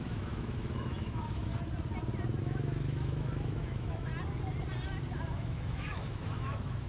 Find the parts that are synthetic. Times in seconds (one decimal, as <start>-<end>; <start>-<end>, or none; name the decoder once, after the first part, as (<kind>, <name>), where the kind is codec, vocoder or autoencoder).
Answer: 0.0-1.5 (autoencoder, DAC-VAE); 2.4-4.1; 5.3-6.9